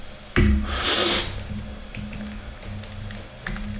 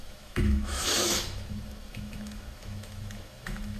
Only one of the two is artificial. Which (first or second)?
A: second